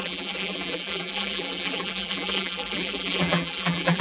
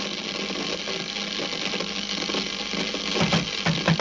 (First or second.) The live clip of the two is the second